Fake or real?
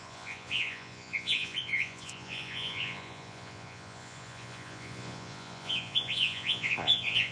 fake